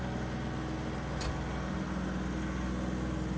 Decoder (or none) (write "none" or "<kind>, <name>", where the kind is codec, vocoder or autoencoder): none